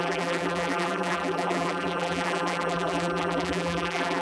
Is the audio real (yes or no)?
no